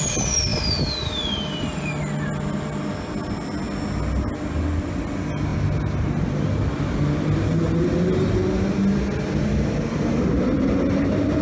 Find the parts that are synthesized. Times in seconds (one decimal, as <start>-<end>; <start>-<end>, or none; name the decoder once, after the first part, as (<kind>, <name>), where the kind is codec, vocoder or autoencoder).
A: none